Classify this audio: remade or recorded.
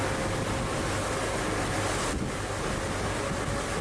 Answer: recorded